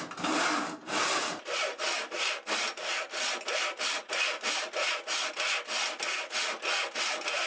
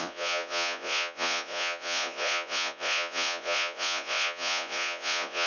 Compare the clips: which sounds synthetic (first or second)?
second